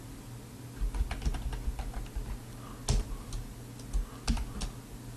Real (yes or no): yes